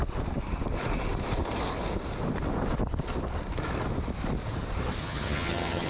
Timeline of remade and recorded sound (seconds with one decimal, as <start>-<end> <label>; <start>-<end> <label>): 0.0-5.0 recorded; 5.0-5.9 remade